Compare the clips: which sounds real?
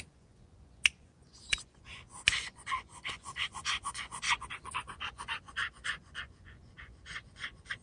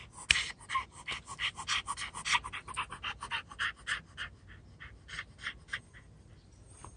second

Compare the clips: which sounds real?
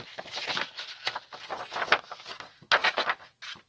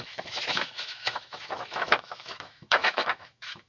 first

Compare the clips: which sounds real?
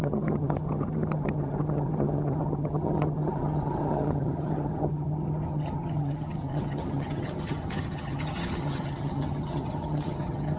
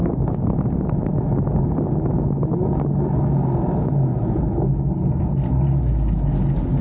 second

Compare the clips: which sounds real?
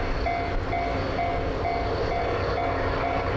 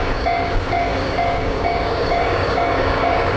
first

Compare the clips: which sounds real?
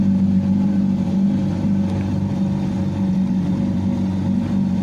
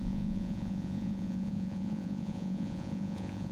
first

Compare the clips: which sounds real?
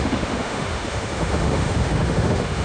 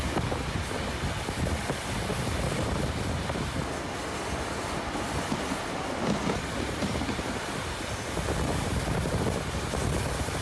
second